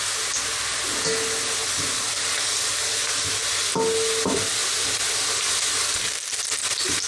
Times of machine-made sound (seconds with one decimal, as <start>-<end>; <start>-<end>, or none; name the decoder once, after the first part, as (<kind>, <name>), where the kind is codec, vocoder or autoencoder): none